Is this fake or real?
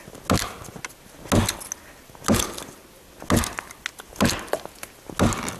real